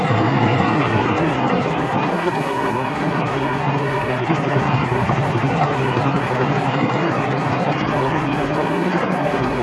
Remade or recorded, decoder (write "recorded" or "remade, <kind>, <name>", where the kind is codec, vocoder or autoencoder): remade, codec, SNAC